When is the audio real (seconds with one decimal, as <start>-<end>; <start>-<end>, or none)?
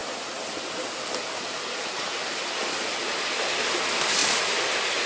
3.1-4.2